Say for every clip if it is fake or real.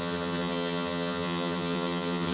fake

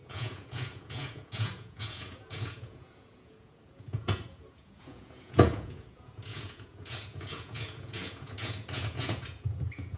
fake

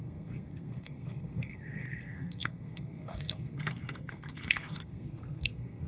fake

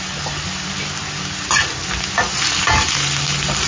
real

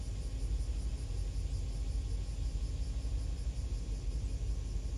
real